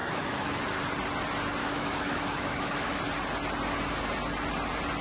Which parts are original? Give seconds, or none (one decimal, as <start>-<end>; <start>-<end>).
0.6-1.6; 3.0-5.0